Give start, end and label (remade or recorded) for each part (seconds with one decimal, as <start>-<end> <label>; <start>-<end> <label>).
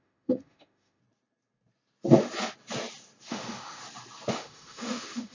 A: 0.0-1.0 remade; 1.0-3.3 recorded; 3.3-3.8 remade; 3.8-4.3 recorded; 4.3-5.3 remade